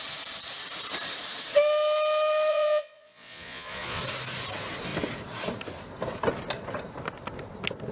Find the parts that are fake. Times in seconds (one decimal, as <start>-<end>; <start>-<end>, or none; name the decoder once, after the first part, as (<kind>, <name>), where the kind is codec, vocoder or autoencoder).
2.5-4.0 (vocoder, Vocos)